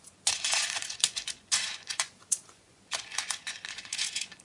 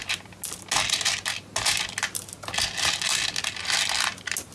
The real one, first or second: second